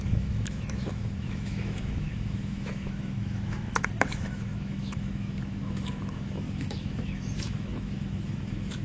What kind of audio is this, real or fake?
fake